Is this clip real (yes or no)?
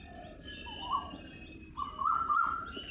yes